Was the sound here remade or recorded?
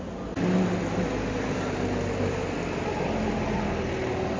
recorded